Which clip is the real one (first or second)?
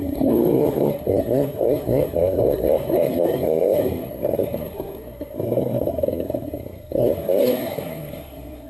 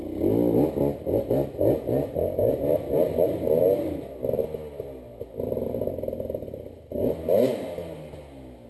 second